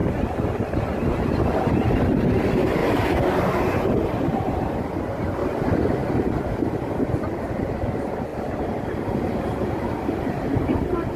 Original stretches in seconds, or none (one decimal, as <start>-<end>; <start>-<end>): 5.4-6.2